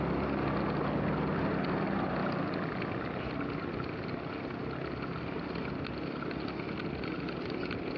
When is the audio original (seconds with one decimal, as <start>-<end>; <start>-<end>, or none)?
0.0-8.0